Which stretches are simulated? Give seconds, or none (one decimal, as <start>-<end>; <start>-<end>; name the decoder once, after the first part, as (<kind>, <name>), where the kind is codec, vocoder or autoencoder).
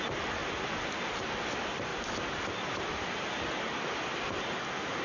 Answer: 0.0-0.4 (vocoder, BigVGAN v2); 1.4-1.9; 4.6-5.0